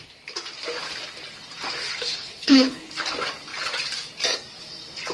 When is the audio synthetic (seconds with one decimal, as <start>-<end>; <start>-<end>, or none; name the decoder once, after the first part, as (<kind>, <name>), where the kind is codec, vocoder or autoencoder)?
1.8-2.9 (codec, HILCodec)